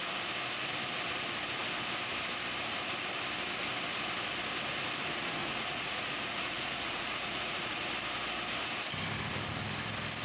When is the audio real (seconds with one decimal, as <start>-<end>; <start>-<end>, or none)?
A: 0.0-5.4; 7.8-10.2